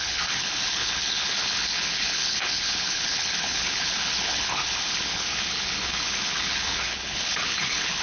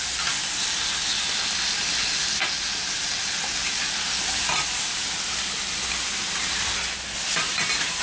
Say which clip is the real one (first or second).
second